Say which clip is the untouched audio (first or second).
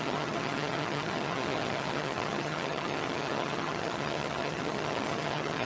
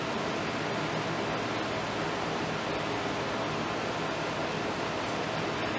second